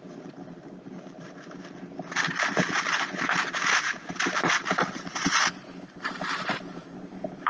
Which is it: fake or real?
fake